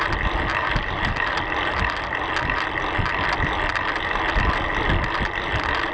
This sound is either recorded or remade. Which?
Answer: recorded